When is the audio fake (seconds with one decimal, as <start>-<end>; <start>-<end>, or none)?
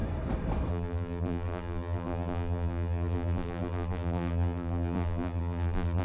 0.7-6.0